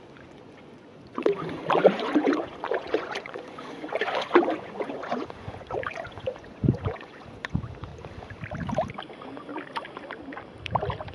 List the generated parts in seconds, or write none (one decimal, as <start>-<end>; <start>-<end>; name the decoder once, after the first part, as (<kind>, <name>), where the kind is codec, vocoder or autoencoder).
0.0-7.9 (vocoder, Vocos); 9.1-9.5